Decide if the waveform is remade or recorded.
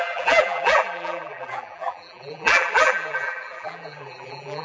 remade